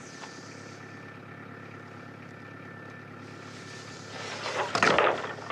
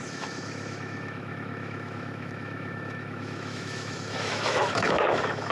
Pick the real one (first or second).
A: first